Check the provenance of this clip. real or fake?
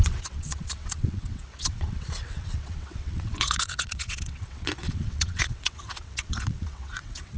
fake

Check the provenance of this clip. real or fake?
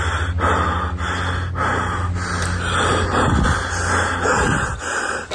real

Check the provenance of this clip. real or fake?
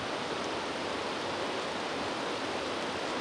real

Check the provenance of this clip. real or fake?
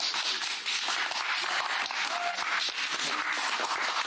real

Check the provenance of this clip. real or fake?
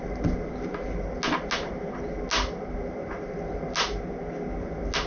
real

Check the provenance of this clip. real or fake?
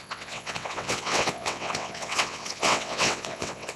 fake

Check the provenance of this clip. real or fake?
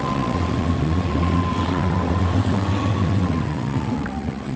fake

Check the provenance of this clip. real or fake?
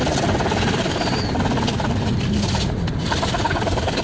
real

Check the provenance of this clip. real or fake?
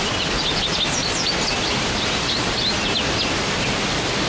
real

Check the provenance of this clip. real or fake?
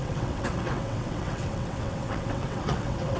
fake